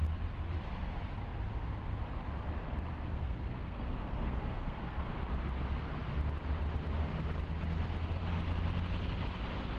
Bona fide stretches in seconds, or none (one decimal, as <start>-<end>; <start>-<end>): 0.0-3.1; 5.2-9.8